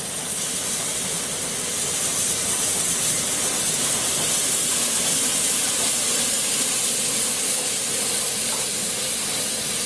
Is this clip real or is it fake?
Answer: real